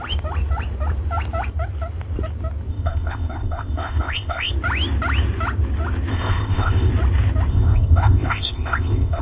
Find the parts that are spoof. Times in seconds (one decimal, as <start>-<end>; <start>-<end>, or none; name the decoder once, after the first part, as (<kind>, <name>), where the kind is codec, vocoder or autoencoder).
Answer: 2.7-4.5 (codec, ZipCodec); 6.1-6.9; 7.5-9.2